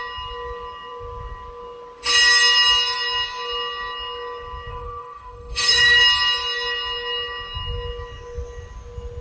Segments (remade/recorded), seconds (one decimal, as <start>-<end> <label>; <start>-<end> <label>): 0.0-4.7 recorded; 4.7-6.0 remade; 6.0-9.2 recorded